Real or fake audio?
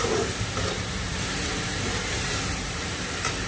fake